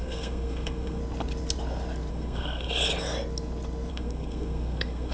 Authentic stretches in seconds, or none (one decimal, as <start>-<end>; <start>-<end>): 1.0-2.1; 2.9-3.9